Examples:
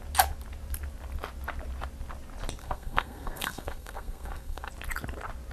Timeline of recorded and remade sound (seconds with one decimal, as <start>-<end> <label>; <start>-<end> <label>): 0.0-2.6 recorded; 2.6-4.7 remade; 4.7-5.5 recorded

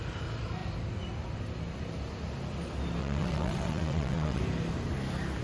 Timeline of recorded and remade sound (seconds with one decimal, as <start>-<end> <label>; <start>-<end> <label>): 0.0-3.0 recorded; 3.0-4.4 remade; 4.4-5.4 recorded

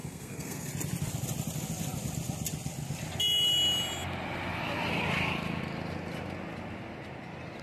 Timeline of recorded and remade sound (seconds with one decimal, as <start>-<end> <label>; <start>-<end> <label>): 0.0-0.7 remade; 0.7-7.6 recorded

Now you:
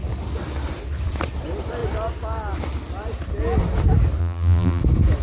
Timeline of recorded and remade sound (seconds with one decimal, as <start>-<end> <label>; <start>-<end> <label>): 0.0-4.2 recorded; 4.2-4.8 remade; 4.8-5.2 recorded